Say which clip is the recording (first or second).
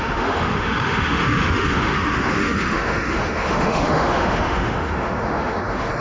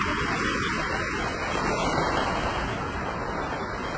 second